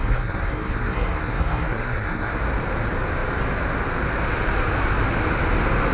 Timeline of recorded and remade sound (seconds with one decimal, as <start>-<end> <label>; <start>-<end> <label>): 0.0-2.4 remade; 2.4-5.9 recorded